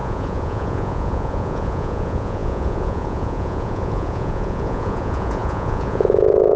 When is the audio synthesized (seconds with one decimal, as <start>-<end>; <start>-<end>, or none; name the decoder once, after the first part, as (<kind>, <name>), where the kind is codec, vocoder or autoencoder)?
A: 0.0-6.6 (vocoder, Vocos)